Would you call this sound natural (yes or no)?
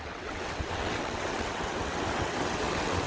no